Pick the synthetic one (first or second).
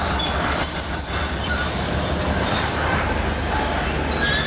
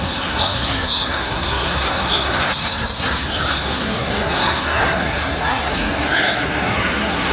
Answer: second